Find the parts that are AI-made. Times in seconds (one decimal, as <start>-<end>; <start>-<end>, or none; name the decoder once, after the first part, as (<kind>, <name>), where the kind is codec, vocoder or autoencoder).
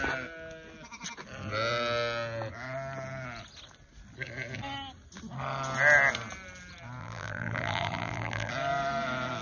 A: 7.0-8.5 (vocoder, BigVGAN v2)